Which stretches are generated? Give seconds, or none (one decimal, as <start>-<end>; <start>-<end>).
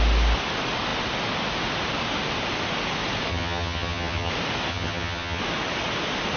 3.3-4.3; 4.7-5.4